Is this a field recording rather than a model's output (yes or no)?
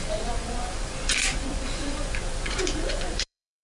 no